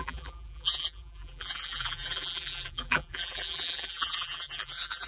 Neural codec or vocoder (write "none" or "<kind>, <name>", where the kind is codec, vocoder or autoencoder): vocoder, BigVGAN v2